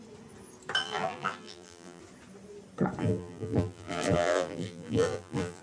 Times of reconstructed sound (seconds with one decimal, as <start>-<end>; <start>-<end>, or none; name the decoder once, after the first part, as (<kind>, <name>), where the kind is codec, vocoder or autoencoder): 0.8-2.0 (vocoder, BigVGAN v2); 3.0-5.6